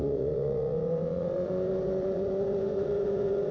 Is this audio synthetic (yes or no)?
yes